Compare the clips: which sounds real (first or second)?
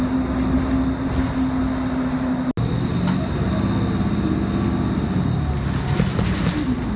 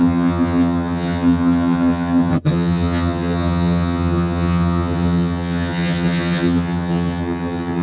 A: first